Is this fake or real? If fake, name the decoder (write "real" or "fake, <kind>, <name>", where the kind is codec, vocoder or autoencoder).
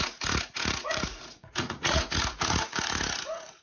fake, vocoder, Vocos